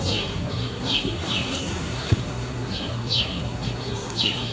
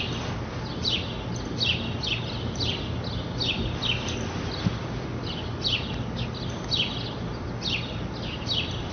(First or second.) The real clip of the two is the second